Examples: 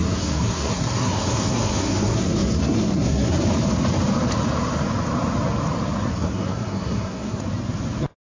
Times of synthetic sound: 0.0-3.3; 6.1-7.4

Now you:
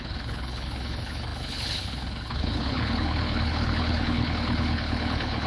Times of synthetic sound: 0.0-5.5

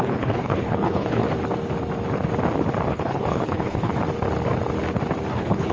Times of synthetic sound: 0.0-1.2; 2.9-3.9; 5.3-5.7

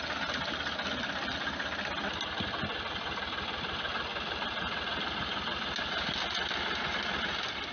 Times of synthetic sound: none

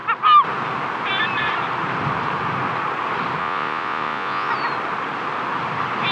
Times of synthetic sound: 3.4-4.5

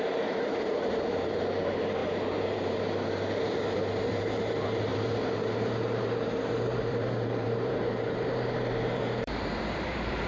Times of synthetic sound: 0.0-10.3

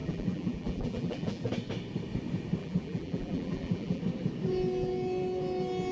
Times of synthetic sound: 0.0-1.5; 2.6-4.0